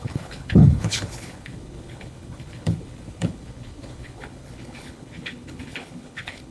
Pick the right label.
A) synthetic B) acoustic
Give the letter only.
A